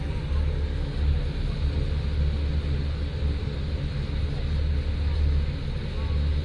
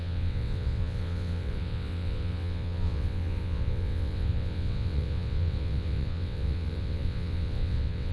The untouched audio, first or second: first